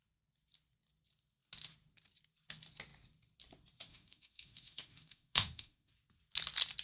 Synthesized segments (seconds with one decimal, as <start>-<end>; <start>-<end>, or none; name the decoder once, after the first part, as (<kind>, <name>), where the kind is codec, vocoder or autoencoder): 3.9-5.9 (autoencoder, DAC-VAE)